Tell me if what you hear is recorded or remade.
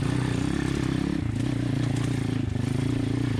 recorded